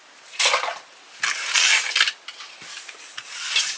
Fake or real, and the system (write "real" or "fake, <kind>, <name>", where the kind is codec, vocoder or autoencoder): real